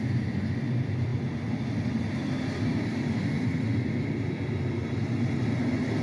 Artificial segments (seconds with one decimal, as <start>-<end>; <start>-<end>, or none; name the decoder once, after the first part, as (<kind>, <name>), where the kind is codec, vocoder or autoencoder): none